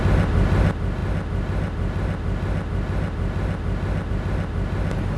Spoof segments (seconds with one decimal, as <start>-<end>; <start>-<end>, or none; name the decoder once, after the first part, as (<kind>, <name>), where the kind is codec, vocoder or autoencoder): none